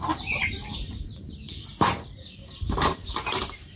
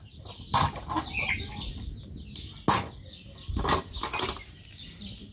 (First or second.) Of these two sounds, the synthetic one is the first